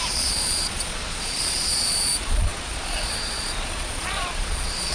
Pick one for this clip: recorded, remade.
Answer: remade